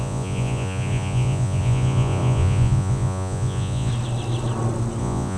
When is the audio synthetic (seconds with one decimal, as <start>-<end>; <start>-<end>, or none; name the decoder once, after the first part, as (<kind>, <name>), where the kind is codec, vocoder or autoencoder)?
0.0-3.9 (vocoder, Vocos); 5.0-5.4